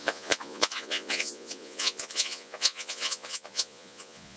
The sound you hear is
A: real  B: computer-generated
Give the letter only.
B